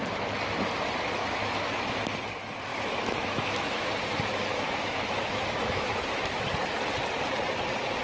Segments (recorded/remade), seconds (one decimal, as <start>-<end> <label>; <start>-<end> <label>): 0.0-1.2 recorded; 1.2-1.9 remade; 1.9-2.7 recorded; 2.7-3.9 remade; 3.9-4.5 recorded; 4.5-6.4 remade; 6.4-8.0 recorded

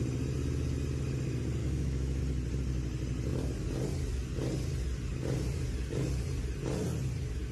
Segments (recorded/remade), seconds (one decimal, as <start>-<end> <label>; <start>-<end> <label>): 0.0-1.6 recorded; 1.6-2.2 remade; 2.2-7.5 recorded

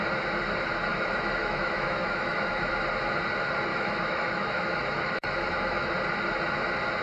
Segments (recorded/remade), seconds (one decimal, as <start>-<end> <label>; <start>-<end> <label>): 0.0-0.9 recorded; 0.9-2.7 remade; 2.7-3.7 recorded; 3.7-5.9 remade; 5.9-7.0 recorded

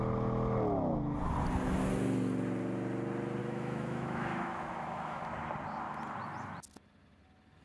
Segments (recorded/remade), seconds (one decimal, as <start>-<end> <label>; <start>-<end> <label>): 0.0-3.4 recorded; 3.4-5.2 remade; 5.2-7.6 recorded